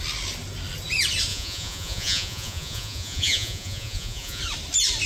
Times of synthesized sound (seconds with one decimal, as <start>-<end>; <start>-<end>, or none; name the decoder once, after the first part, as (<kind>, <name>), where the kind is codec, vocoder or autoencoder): 1.3-4.4 (vocoder, Vocos)